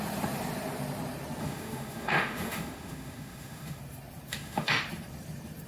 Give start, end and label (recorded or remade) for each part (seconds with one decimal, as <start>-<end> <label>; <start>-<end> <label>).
0.0-1.4 recorded; 1.4-3.8 remade; 3.8-4.3 recorded; 4.3-4.8 remade; 4.8-5.7 recorded